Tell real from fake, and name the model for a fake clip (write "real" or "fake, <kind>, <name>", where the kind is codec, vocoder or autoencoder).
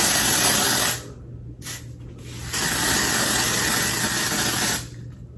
real